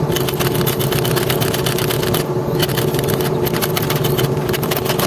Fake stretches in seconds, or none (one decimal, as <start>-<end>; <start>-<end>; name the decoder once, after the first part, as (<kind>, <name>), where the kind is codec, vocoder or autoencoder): none